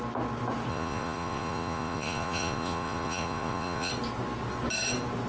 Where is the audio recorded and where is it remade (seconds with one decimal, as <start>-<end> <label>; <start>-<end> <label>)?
0.0-0.7 recorded; 0.7-3.9 remade; 3.9-5.3 recorded